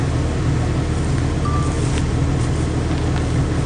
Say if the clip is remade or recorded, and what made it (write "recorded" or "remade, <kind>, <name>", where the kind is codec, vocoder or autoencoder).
recorded